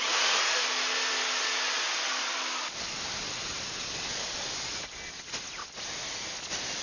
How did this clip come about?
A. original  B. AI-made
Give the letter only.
A